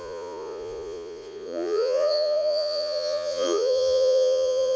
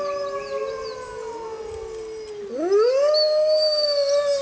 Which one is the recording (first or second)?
second